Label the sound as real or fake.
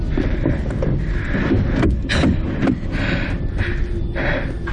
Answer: real